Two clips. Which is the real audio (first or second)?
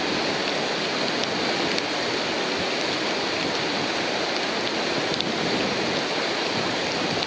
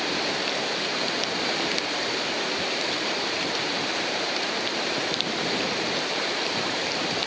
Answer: first